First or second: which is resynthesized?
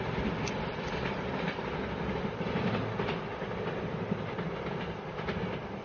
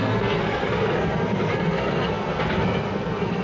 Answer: second